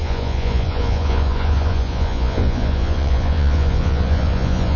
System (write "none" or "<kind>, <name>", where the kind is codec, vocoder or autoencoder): vocoder, Vocos